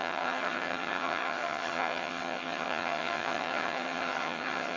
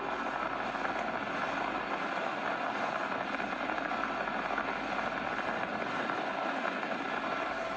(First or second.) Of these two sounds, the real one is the second